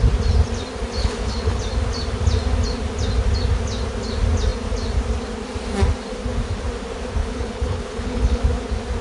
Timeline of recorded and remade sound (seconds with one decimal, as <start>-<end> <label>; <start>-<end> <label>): 0.0-1.0 recorded; 1.0-1.6 remade; 1.6-7.2 recorded; 7.2-8.4 remade; 8.4-9.0 recorded